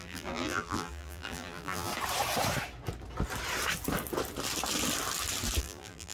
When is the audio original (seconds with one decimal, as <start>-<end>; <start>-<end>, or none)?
1.9-5.6